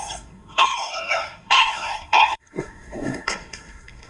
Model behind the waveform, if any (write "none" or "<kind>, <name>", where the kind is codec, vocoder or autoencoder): codec, SNAC